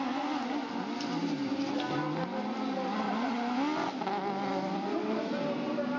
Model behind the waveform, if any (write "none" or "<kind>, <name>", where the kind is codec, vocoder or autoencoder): none